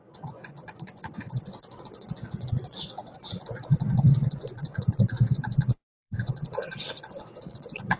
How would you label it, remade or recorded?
remade